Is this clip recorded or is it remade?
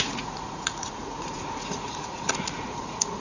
remade